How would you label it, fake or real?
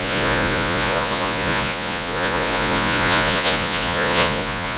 fake